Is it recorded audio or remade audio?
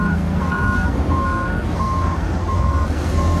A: remade